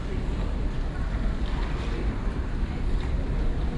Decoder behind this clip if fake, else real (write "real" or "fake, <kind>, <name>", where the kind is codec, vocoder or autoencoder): real